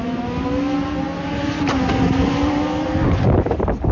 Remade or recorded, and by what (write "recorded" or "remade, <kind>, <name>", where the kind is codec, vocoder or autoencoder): recorded